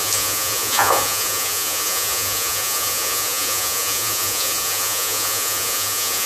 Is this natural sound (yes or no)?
no